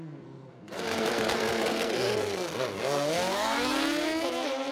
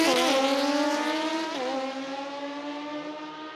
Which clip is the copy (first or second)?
first